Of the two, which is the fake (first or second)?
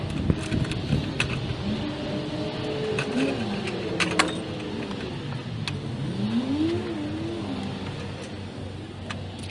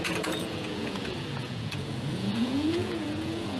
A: second